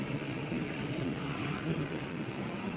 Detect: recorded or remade remade